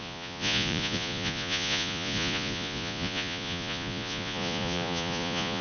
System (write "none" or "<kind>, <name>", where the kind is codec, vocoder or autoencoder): vocoder, Vocos